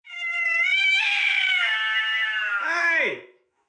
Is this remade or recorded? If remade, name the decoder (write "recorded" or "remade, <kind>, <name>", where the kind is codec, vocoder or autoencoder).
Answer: remade, autoencoder, DAC-VAE